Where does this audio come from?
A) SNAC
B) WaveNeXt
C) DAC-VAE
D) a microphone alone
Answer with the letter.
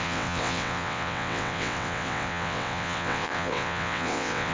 B